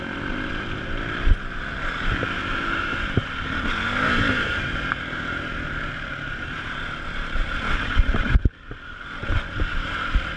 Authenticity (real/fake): fake